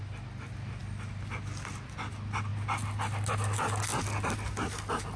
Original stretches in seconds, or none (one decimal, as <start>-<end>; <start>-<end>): 0.0-5.2